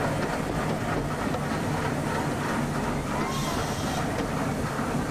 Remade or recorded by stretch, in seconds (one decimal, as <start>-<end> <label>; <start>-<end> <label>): 0.0-3.4 recorded; 3.4-4.5 remade; 4.5-5.1 recorded